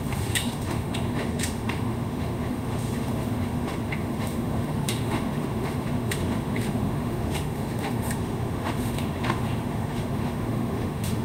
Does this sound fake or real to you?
fake